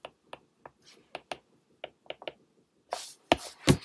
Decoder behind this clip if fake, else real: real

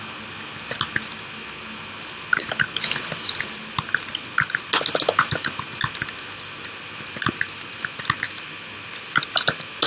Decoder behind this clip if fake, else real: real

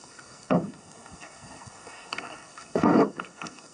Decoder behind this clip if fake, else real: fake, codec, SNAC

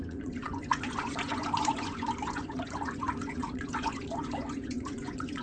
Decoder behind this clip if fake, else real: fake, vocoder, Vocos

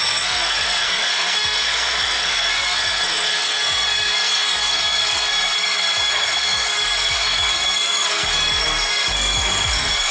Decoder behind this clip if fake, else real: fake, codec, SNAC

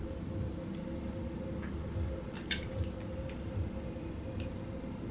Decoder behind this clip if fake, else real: real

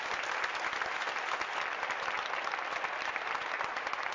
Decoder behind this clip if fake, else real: real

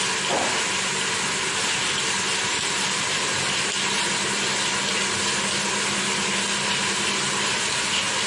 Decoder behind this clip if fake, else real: real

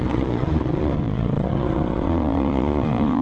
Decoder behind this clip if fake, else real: fake, vocoder, Vocos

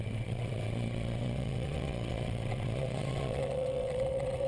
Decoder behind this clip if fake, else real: fake, vocoder, WaveNeXt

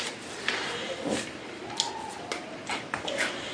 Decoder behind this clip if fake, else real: real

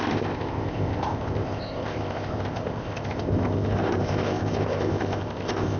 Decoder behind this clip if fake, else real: fake, codec, ZipCodec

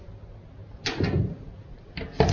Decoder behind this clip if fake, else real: real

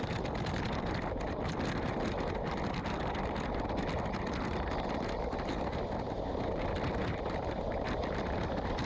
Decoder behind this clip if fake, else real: real